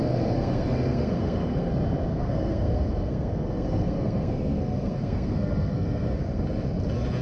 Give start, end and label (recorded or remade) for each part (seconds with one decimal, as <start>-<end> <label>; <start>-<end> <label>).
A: 0.0-1.7 remade; 1.7-2.1 recorded; 2.1-6.4 remade; 6.4-7.2 recorded